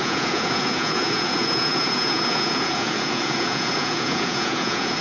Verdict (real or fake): fake